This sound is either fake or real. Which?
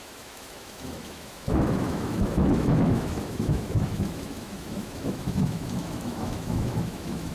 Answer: fake